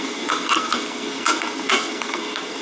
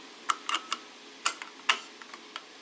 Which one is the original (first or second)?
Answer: second